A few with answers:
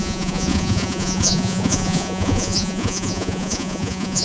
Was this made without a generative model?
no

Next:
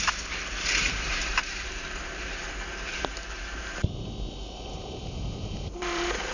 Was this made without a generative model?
no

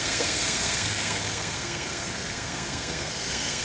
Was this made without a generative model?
no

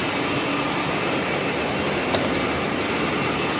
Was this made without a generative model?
yes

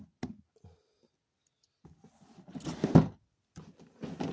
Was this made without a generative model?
yes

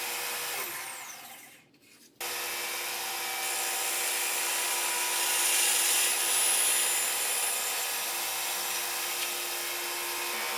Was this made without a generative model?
yes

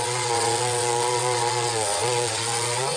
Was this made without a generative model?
no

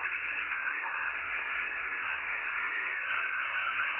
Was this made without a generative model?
no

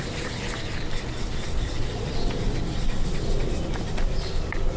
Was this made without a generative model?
yes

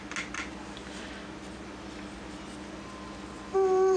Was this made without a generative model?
yes